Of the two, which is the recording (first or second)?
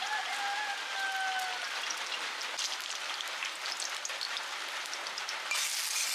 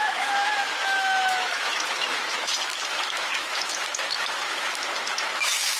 first